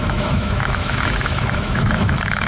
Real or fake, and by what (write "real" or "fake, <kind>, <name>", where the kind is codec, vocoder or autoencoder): fake, autoencoder, DAC-VAE